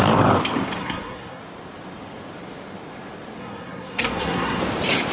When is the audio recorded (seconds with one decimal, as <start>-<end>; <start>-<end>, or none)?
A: 0.0-0.8; 1.4-3.4; 4.6-5.1